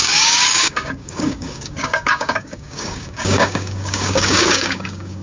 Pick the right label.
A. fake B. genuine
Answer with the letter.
A